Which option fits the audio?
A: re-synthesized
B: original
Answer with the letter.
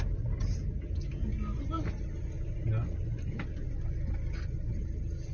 B